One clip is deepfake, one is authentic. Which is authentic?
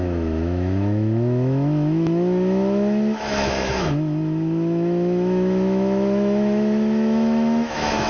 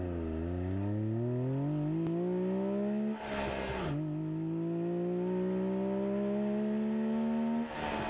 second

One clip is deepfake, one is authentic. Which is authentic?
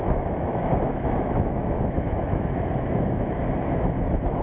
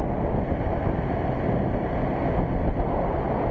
second